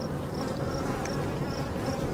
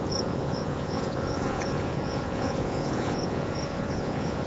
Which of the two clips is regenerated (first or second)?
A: second